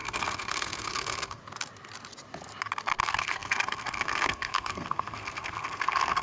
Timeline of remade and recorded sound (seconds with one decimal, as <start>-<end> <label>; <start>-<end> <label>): 0.0-1.4 remade; 1.4-3.0 recorded; 3.0-6.2 remade